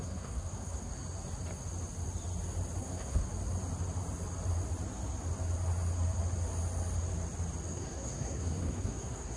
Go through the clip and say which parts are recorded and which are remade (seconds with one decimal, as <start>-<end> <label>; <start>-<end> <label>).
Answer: 0.0-0.9 remade; 0.9-2.8 recorded; 2.8-3.2 remade; 3.2-7.7 recorded; 7.7-9.4 remade